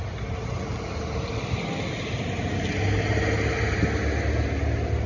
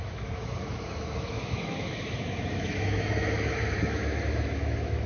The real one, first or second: first